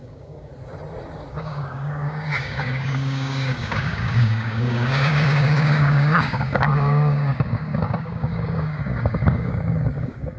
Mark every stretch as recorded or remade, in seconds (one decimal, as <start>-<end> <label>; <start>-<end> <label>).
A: 0.0-0.5 remade; 0.5-1.3 recorded; 1.3-10.4 remade